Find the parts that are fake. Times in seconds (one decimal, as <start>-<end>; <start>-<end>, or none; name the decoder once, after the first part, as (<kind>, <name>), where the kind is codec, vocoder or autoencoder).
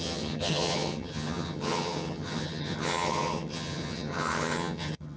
0.0-5.2 (vocoder, HiFi-GAN)